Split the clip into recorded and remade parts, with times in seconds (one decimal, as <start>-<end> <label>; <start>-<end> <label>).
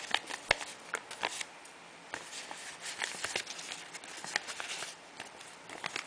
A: 0.0-6.1 recorded